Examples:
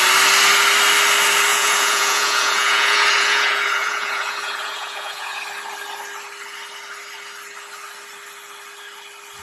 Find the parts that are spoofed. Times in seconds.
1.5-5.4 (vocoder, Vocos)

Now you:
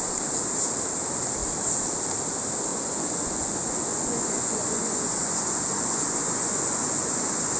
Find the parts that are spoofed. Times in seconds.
2.7-7.6 (vocoder, Vocos)

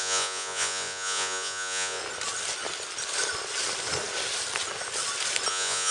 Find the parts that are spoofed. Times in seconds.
0.0-2.0 (vocoder, Vocos); 5.5-5.9

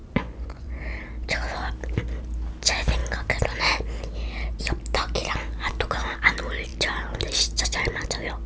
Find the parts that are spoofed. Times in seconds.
0.0-0.8 (vocoder, Vocos)

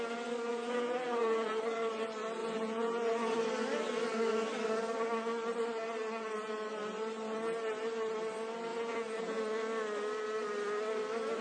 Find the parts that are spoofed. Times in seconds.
0.5-1.6 (vocoder, Vocos); 2.4-3.4; 8.7-9.4

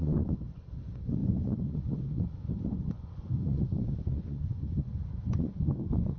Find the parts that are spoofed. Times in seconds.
0.0-6.2 (vocoder, Vocos)